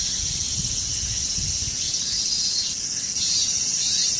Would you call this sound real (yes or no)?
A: no